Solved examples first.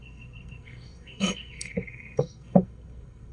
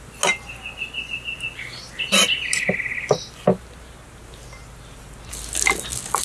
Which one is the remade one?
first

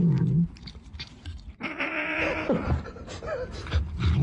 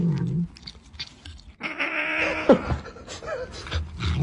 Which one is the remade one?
first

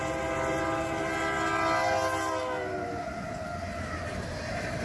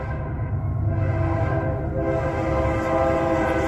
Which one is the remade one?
second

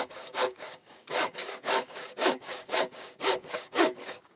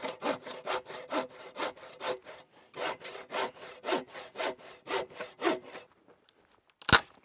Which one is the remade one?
first